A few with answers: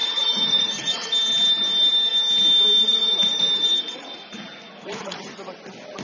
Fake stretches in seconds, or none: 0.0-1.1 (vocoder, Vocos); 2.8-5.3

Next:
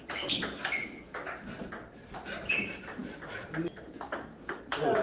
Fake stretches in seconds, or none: none

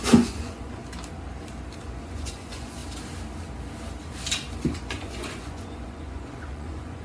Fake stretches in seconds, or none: 0.0-0.8 (vocoder, Vocos); 1.8-2.8; 4.8-7.0